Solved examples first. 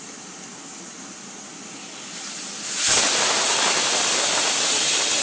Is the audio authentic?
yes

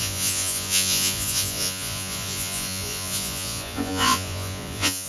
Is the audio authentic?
no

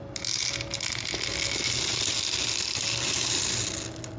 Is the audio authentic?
yes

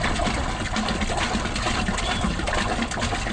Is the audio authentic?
yes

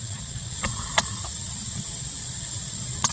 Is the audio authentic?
no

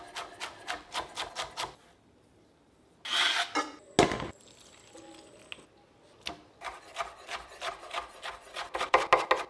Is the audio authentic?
yes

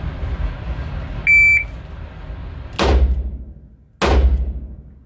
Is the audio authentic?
yes